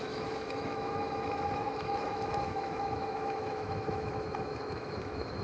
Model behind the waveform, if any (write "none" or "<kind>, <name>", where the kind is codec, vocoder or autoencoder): autoencoder, DAC-VAE